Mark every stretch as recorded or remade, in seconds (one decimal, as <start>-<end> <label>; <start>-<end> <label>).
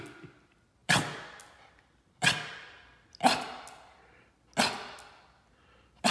0.0-6.1 recorded